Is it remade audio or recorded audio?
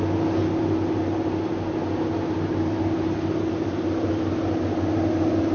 recorded